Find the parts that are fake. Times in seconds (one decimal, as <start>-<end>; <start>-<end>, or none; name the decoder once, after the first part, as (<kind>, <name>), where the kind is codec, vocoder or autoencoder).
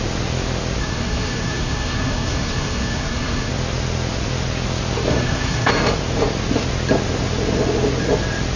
0.8-3.5 (codec, SNAC); 5.1-5.7